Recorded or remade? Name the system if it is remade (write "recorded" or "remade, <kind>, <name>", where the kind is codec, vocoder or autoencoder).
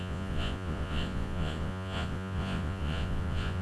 remade, vocoder, Vocos